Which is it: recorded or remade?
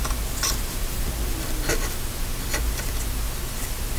recorded